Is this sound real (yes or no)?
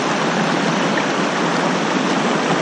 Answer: yes